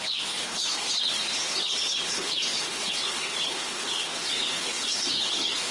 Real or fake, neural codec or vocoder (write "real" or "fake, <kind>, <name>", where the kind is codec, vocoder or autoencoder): fake, codec, HILCodec